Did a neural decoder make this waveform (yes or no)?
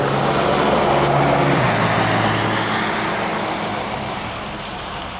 no